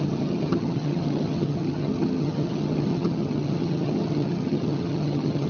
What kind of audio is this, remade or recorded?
remade